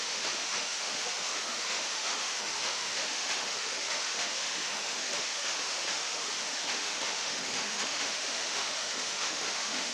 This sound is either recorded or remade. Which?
remade